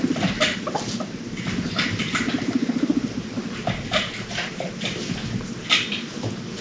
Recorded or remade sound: remade